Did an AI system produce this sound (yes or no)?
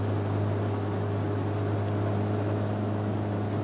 no